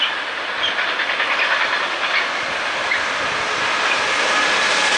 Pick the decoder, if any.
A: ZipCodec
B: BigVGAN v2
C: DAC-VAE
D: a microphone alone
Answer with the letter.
D